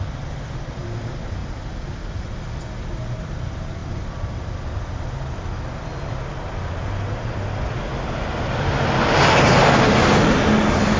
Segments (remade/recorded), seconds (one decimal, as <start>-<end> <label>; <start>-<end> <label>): 0.0-11.0 recorded